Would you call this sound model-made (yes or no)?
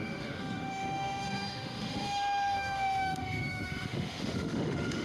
yes